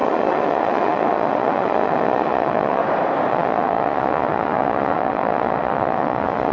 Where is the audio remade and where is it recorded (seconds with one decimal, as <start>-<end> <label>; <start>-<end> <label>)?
0.0-2.8 remade; 2.8-3.3 recorded; 3.3-6.5 remade